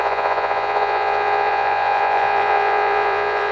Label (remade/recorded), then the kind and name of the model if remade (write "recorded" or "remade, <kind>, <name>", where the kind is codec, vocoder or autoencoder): remade, vocoder, Vocos